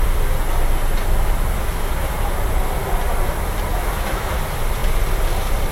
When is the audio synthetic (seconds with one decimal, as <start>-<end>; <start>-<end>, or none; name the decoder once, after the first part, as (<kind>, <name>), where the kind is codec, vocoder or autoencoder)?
1.6-2.3 (autoencoder, DAC-VAE); 3.7-4.3